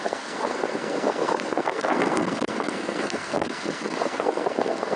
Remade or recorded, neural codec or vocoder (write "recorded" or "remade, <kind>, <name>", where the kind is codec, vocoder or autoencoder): remade, codec, SNAC